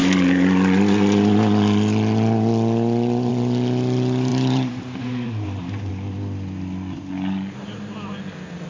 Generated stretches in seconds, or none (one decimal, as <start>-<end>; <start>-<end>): 4.3-5.9